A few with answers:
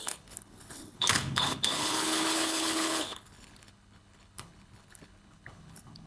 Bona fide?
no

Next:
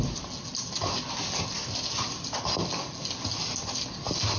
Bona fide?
yes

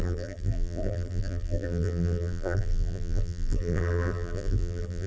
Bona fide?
no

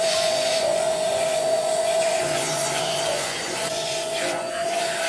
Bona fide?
no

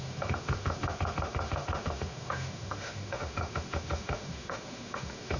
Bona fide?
no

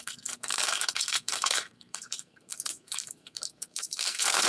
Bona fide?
no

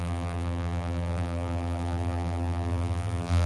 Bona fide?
no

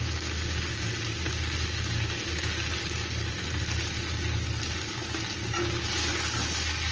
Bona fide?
yes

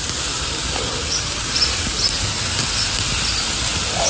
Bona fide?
yes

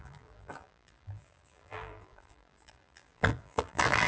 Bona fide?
no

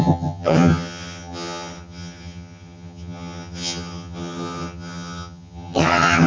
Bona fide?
no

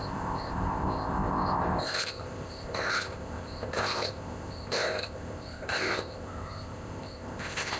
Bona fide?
no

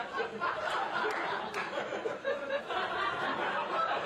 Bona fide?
yes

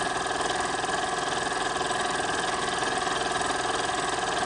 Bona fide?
yes